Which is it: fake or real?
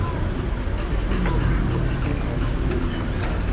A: real